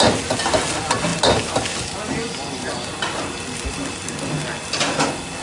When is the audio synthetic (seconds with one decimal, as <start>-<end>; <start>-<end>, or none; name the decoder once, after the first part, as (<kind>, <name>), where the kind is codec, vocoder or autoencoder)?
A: none